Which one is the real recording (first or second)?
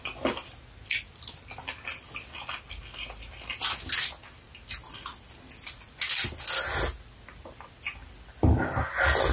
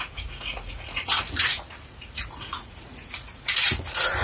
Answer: first